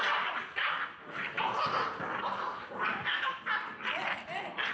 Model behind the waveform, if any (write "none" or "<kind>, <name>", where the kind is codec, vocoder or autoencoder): none